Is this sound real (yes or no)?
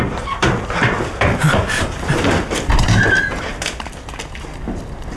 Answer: yes